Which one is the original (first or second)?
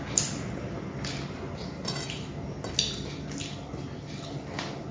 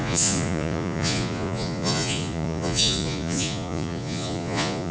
first